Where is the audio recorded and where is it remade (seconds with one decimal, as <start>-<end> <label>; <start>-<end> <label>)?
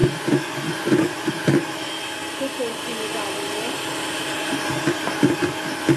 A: 0.0-1.3 remade; 1.3-6.0 recorded